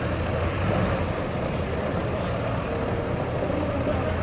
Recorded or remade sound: recorded